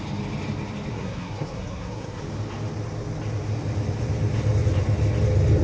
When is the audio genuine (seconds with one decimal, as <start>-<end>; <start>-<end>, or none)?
0.0-0.9; 2.2-5.6